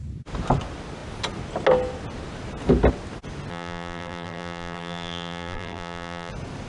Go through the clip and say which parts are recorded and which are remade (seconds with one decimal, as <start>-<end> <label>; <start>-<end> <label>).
0.0-3.5 recorded; 3.5-6.3 remade; 6.3-6.7 recorded